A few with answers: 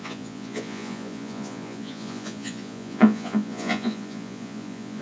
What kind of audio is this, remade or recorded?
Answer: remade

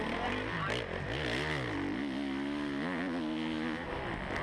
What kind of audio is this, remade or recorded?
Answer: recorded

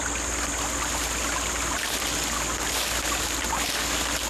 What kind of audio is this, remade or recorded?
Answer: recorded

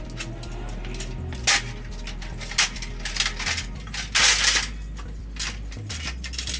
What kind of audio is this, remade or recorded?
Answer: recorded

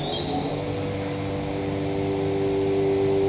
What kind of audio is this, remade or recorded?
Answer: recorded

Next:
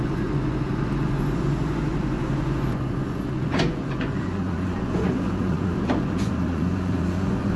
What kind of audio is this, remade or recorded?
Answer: remade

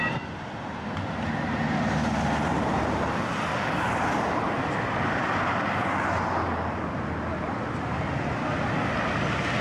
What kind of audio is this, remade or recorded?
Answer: recorded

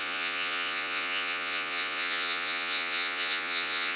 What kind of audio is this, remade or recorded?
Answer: remade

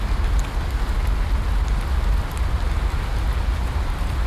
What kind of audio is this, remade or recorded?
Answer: recorded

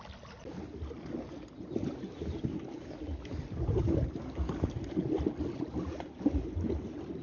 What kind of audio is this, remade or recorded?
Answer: recorded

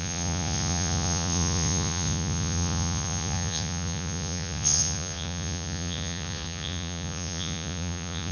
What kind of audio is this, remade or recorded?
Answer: remade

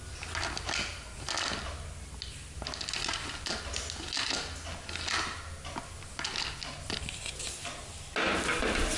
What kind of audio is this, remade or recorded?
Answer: recorded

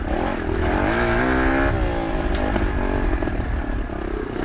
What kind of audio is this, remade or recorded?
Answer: recorded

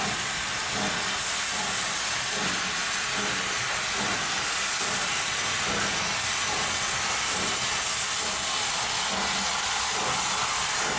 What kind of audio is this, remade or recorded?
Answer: recorded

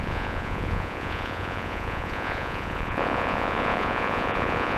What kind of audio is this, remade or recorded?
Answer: remade